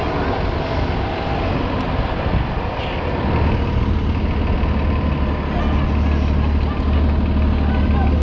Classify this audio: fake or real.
real